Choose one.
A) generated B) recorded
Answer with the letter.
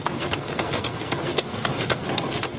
A